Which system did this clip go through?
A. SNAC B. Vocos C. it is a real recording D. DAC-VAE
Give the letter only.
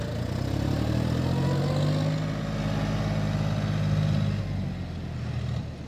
C